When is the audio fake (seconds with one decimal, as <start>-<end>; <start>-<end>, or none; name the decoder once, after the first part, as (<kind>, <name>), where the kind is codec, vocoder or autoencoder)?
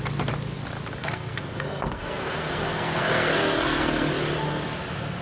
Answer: 1.0-4.1 (codec, SNAC)